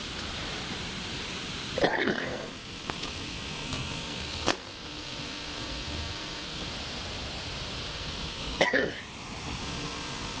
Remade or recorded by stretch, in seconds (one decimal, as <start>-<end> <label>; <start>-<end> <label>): 0.0-1.9 recorded; 1.9-6.7 remade; 6.7-7.9 recorded; 7.9-8.9 remade; 8.9-9.6 recorded; 9.6-10.4 remade